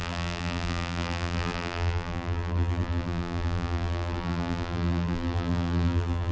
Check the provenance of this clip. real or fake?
fake